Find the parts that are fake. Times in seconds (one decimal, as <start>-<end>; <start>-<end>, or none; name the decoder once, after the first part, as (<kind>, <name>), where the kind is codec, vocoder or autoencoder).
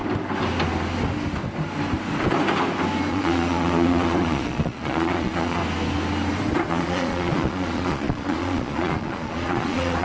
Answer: 3.1-5.6 (vocoder, Vocos); 6.7-10.0